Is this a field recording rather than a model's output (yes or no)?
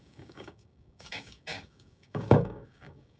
no